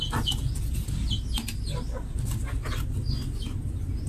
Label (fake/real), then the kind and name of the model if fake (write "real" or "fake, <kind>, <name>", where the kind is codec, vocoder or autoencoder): real